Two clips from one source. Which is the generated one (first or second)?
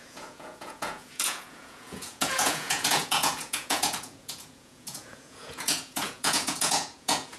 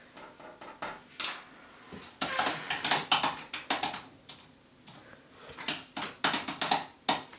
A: first